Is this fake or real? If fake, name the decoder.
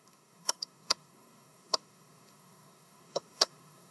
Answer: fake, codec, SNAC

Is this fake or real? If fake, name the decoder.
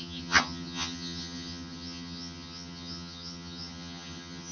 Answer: fake, vocoder, HiFi-GAN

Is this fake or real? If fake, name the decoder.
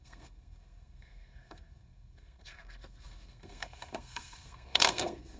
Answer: fake, codec, SNAC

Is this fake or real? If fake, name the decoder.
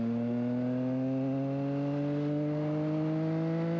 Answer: real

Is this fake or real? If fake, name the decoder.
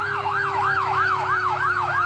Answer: fake, autoencoder, DAC-VAE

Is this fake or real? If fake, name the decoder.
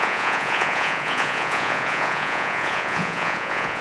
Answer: fake, vocoder, Vocos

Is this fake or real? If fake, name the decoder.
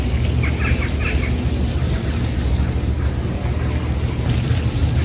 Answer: real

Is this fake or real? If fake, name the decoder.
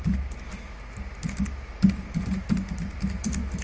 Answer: real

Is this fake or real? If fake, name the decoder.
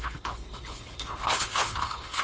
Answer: fake, codec, HILCodec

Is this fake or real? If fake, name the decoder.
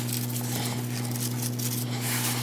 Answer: real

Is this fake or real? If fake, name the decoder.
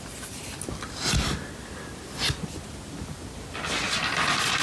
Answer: real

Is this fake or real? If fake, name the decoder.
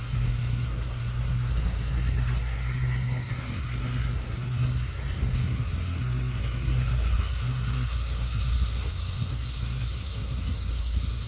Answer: fake, codec, SNAC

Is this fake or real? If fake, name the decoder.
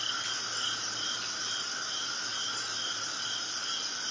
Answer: real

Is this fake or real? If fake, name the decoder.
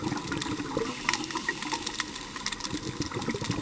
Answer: real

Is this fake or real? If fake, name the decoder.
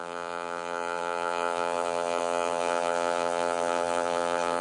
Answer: fake, vocoder, BigVGAN v2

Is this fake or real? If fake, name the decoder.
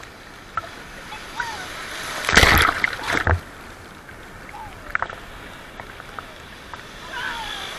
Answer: real